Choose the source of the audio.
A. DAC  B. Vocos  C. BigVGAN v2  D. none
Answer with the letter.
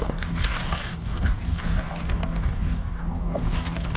A